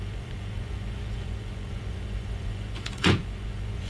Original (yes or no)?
no